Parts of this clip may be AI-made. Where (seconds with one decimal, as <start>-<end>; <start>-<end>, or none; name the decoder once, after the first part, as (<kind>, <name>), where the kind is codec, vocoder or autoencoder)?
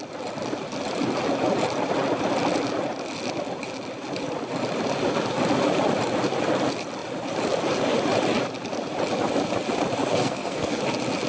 10.1-10.8 (codec, SNAC)